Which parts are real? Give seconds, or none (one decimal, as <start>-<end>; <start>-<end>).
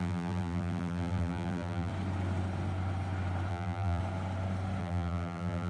1.9-3.5; 4.0-4.8